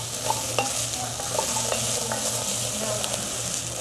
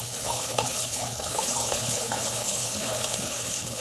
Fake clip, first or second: second